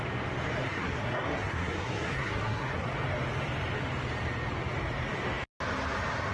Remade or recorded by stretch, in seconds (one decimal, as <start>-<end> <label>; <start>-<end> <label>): 0.0-0.6 recorded; 0.6-2.9 remade; 2.9-6.3 recorded